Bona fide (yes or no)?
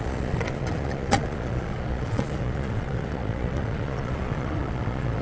no